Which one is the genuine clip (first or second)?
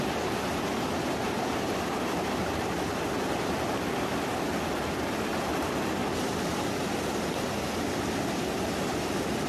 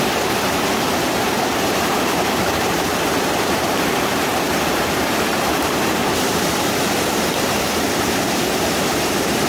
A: first